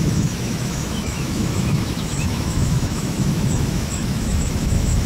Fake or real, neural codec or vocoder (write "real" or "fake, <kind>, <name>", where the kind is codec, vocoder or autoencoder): fake, autoencoder, DAC-VAE